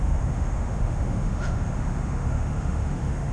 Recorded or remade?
remade